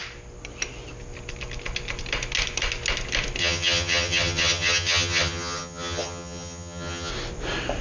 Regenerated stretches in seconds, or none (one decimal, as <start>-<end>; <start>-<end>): 3.4-7.1